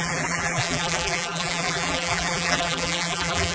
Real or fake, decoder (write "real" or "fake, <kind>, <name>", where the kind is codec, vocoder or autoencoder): fake, vocoder, BigVGAN v2